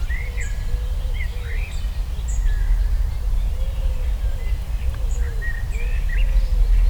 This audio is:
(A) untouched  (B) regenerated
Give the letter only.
A